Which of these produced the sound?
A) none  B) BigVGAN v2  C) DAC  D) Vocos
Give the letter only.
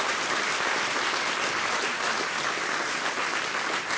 A